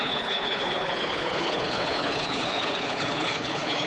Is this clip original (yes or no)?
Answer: no